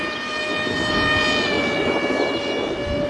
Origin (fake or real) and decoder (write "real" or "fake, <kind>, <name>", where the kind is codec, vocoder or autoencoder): real